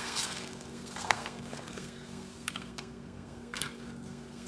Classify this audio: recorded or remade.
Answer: remade